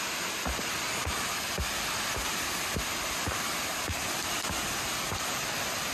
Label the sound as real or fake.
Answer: real